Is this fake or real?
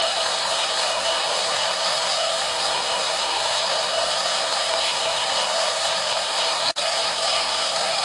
fake